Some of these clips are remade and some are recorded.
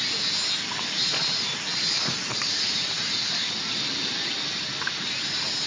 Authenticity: recorded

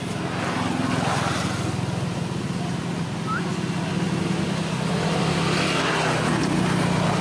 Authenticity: recorded